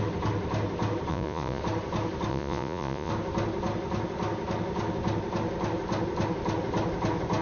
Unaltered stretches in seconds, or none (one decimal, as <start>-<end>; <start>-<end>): 0.0-1.1; 1.6-2.3; 3.1-7.4